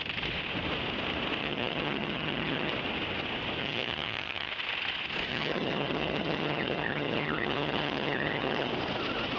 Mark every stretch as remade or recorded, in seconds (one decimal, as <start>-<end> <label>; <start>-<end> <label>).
0.0-1.4 recorded; 1.4-2.7 remade; 2.7-3.6 recorded; 3.6-4.5 remade; 4.5-5.3 recorded; 5.3-8.7 remade; 8.7-9.4 recorded